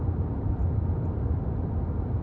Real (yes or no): yes